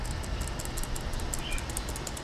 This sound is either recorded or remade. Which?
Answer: recorded